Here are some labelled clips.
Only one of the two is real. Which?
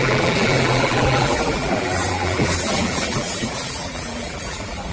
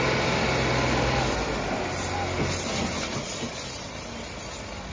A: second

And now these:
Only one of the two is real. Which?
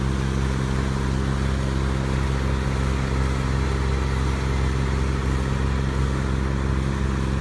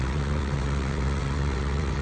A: first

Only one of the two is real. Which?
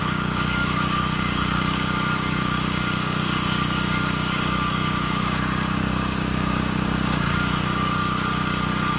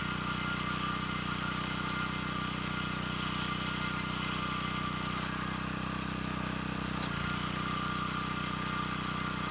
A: second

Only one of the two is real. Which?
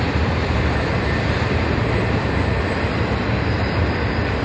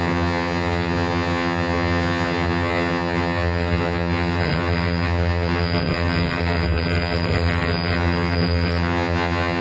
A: first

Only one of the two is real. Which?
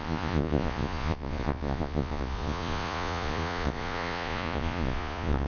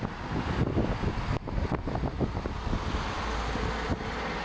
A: second